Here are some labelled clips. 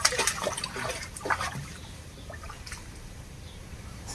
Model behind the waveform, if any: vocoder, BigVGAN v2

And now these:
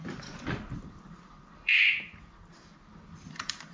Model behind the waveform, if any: vocoder, BigVGAN v2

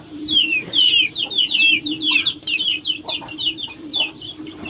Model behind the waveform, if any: vocoder, BigVGAN v2